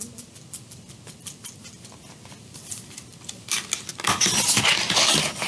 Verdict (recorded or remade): recorded